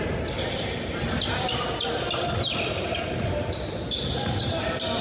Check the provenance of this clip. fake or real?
real